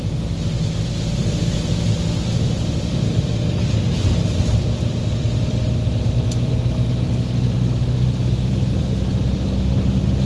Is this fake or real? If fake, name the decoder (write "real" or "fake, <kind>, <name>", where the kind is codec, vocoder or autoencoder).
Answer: real